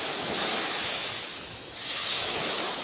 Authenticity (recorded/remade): remade